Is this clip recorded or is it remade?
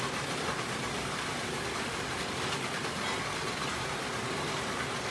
recorded